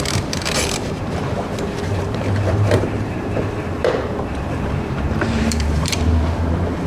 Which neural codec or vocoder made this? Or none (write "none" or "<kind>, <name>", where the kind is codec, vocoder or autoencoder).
vocoder, BigVGAN v2